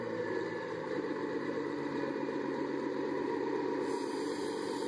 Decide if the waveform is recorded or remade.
remade